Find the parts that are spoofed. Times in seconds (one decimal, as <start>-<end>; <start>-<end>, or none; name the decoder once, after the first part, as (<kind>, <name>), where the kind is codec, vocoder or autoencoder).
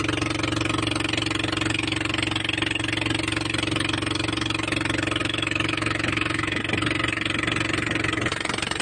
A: 5.2-6.6 (autoencoder, DAC-VAE)